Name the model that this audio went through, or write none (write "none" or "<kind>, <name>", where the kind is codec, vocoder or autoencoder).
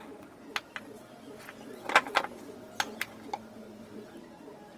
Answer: none